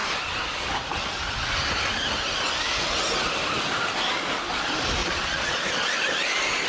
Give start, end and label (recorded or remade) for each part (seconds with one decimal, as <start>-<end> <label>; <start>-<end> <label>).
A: 0.0-5.0 recorded; 5.0-5.6 remade; 5.6-6.7 recorded